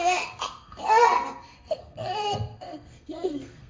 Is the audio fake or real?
fake